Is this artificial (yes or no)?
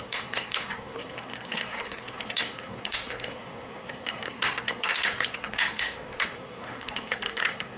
yes